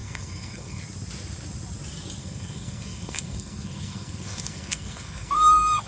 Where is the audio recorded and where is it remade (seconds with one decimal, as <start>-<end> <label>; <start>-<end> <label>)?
0.0-0.8 remade; 0.8-2.2 recorded; 2.2-5.9 remade